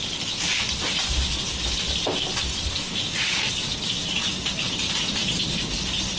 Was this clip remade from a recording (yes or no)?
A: no